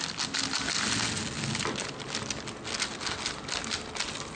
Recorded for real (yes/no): yes